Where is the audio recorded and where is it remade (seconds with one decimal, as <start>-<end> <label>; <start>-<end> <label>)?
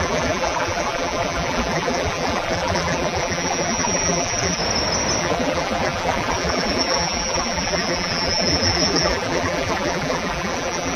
0.0-4.6 remade; 4.6-5.2 recorded; 5.2-11.0 remade